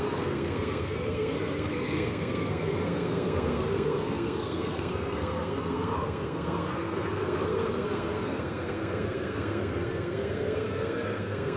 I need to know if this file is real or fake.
fake